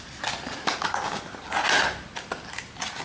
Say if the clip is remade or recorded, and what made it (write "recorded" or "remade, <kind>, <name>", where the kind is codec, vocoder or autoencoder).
recorded